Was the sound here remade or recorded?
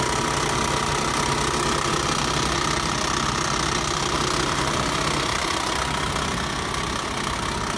recorded